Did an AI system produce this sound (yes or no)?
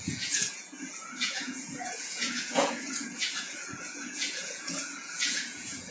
yes